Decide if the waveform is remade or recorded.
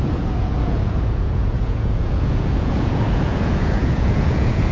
remade